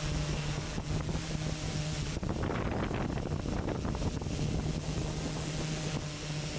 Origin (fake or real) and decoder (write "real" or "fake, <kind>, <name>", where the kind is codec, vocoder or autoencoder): real